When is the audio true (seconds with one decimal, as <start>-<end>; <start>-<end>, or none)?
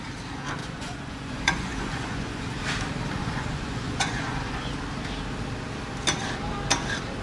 0.0-0.6; 2.4-3.2; 4.7-7.2